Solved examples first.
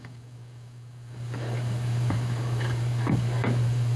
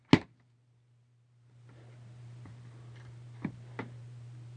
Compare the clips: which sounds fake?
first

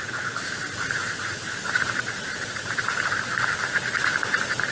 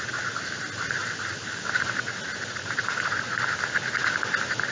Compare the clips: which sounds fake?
first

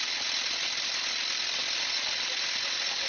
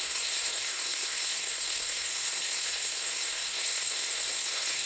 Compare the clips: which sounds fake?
second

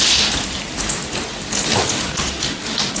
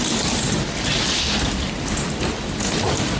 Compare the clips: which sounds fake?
second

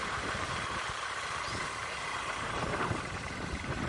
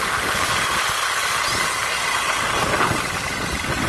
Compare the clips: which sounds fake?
first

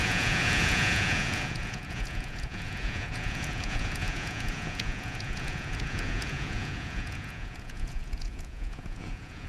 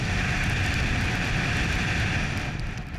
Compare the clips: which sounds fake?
first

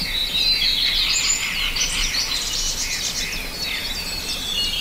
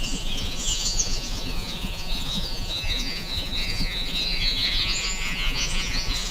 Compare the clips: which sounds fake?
second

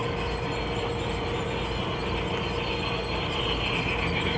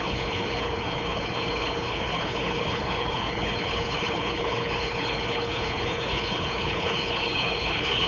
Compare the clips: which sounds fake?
second